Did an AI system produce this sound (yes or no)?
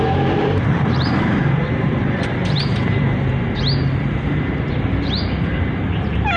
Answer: yes